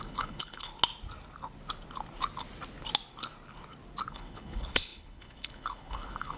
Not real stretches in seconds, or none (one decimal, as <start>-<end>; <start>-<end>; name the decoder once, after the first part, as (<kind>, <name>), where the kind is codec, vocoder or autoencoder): 0.0-0.7 (codec, HILCodec); 4.1-6.4